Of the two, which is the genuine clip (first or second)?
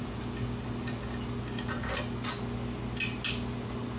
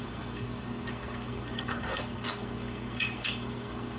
first